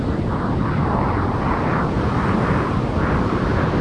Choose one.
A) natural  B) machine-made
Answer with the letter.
A